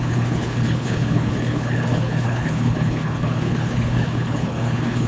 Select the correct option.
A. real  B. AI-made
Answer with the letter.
B